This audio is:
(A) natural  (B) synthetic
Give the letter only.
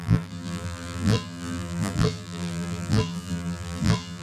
B